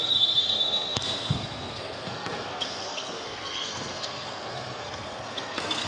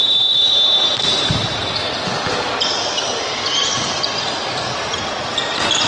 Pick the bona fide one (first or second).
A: second